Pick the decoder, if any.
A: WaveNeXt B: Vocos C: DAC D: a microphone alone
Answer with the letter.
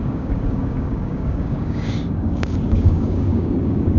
C